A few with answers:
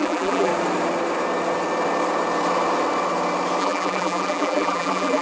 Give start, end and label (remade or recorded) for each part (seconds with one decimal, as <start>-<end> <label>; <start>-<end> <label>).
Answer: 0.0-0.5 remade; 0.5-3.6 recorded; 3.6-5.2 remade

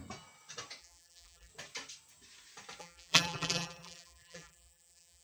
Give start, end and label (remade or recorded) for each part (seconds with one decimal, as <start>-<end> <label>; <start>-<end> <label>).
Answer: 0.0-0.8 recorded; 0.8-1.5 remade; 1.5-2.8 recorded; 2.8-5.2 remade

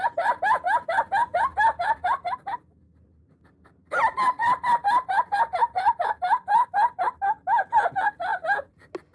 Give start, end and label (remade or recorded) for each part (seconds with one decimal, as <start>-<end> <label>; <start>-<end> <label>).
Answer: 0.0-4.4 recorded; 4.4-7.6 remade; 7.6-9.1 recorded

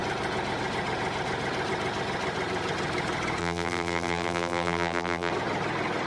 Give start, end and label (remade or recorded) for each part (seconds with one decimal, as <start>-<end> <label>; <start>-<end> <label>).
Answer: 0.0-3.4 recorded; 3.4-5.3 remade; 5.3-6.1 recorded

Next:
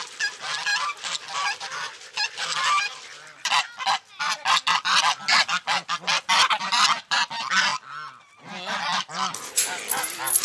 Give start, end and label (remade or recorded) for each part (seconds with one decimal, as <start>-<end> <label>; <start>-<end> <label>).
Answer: 0.0-0.7 recorded; 0.7-4.2 remade; 4.2-10.4 recorded

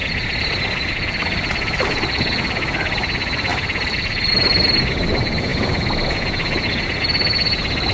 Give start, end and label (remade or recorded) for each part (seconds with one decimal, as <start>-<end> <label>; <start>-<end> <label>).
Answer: 0.0-0.9 remade; 0.9-3.5 recorded; 3.5-4.3 remade; 4.3-7.9 recorded

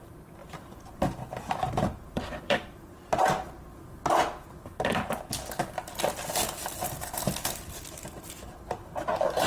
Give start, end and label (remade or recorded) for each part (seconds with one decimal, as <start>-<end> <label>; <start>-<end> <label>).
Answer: 0.0-0.4 recorded; 0.4-3.1 remade; 3.1-9.5 recorded